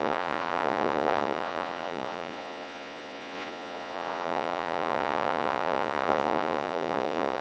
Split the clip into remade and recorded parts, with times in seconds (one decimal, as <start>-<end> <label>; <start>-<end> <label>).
0.0-7.4 remade